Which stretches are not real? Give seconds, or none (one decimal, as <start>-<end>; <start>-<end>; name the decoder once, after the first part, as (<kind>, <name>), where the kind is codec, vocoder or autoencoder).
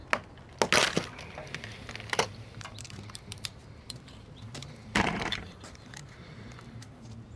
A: 2.1-7.4 (vocoder, BigVGAN v2)